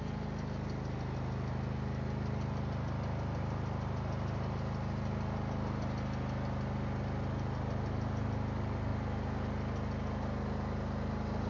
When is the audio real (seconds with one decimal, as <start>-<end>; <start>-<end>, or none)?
0.0-11.5